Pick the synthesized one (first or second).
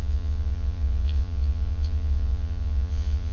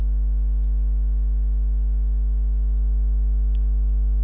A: first